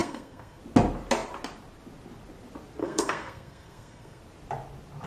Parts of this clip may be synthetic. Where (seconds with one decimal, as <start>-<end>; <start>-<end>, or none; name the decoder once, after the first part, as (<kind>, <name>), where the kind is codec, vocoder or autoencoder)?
0.0-0.6 (codec, SNAC); 2.8-4.2